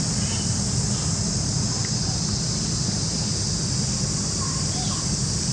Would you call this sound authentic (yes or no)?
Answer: yes